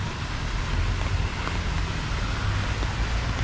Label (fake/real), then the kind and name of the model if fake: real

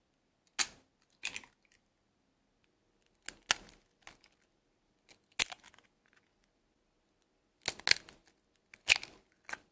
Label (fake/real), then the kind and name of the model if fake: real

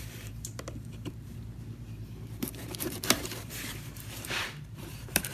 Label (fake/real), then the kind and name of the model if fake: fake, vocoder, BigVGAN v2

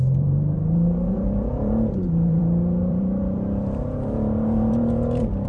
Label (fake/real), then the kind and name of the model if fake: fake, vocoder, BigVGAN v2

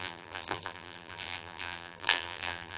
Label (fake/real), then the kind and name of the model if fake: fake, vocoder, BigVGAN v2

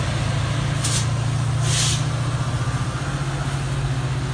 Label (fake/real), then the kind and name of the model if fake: real